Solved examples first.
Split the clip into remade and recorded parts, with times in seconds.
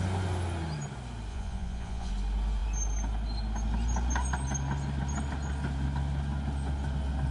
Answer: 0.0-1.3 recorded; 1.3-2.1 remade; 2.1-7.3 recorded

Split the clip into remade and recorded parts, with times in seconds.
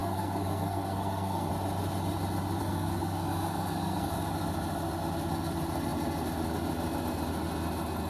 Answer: 0.0-1.5 remade; 1.5-2.6 recorded; 2.6-4.1 remade; 4.1-8.1 recorded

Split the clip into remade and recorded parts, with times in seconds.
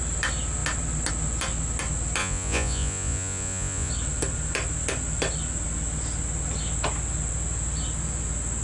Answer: 0.0-2.2 recorded; 2.2-3.9 remade; 3.9-8.6 recorded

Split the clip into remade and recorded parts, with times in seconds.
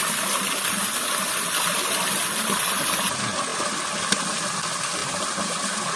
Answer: 0.0-5.0 recorded; 5.0-6.0 remade